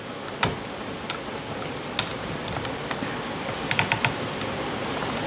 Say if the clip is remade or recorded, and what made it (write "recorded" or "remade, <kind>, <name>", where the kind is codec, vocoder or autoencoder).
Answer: recorded